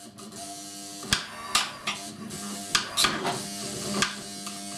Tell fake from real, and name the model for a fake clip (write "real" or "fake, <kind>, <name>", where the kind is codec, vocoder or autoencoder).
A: real